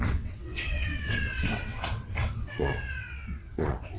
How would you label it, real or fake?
fake